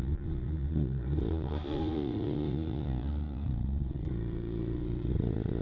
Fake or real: fake